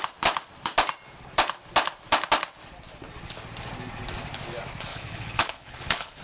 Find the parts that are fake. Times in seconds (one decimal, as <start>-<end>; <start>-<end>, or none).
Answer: 4.9-6.2